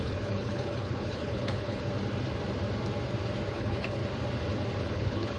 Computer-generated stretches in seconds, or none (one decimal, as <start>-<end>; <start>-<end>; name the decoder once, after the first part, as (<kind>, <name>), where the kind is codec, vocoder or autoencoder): 0.0-1.9 (codec, HILCodec); 3.5-4.0; 4.8-5.4